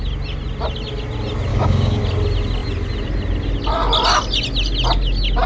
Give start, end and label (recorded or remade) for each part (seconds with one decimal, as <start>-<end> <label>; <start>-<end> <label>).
0.0-1.5 recorded; 1.5-2.0 remade; 2.0-5.5 recorded